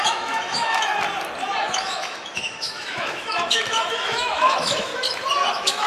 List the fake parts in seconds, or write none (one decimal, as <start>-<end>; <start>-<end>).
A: 0.0-0.9; 1.6-4.9; 5.5-5.9